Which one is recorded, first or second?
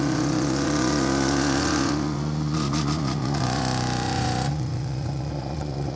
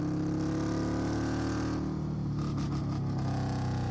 second